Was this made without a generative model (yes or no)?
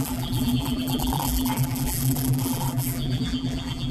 no